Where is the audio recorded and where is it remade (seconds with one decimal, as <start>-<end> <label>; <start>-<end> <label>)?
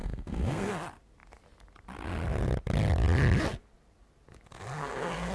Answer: 0.0-0.7 remade; 0.7-4.8 recorded; 4.8-5.3 remade